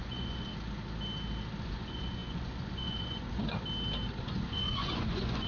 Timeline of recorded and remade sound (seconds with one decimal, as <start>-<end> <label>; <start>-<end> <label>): 0.0-0.5 remade; 0.5-1.6 recorded; 1.6-3.4 remade; 3.4-4.2 recorded; 4.2-5.5 remade